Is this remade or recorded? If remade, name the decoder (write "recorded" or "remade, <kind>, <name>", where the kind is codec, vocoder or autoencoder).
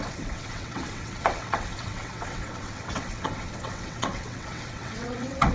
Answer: remade, vocoder, WaveNeXt